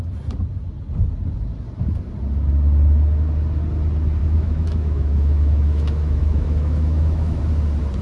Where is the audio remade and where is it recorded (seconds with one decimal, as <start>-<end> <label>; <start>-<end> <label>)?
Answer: 0.0-4.2 recorded; 4.2-7.4 remade; 7.4-8.0 recorded